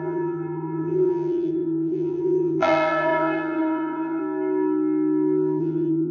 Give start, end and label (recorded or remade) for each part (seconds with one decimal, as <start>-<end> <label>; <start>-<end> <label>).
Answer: 0.0-4.2 remade; 4.2-5.6 recorded; 5.6-6.1 remade